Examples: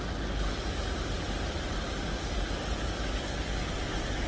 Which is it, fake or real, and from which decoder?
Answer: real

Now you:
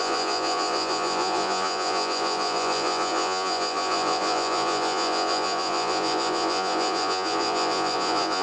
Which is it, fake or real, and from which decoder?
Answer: fake, vocoder, Vocos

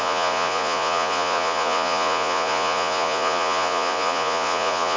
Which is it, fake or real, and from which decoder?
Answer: fake, vocoder, Vocos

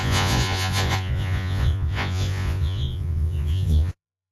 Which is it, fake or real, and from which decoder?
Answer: fake, vocoder, Vocos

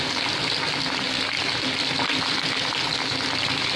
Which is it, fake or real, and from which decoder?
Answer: real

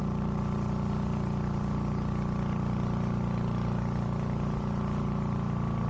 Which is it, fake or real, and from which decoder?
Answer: real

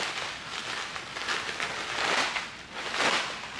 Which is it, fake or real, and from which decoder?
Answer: real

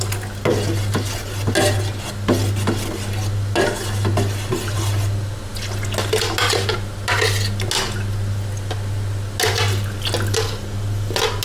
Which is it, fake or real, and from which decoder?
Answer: real